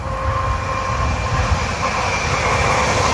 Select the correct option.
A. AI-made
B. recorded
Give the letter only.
B